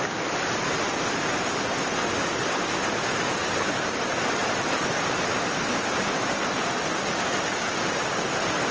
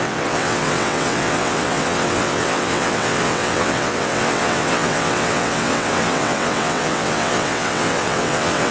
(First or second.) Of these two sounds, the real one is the first